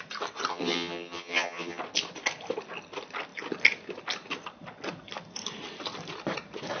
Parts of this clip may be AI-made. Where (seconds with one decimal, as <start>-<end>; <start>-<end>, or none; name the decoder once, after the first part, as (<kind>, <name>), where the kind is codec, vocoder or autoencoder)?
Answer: 0.5-1.8 (vocoder, HiFi-GAN)